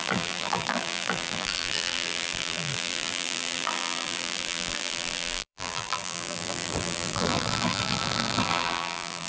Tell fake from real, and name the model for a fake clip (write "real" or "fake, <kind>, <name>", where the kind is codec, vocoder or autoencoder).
fake, vocoder, BigVGAN v2